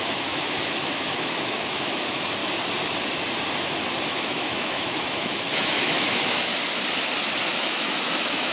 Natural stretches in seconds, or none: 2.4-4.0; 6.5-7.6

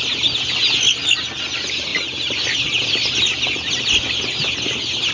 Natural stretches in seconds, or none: 0.0-5.1

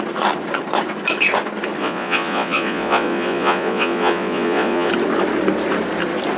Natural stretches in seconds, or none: 0.0-1.8; 4.9-6.4

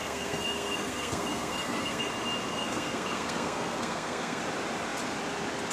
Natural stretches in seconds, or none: 2.1-2.5; 4.4-5.7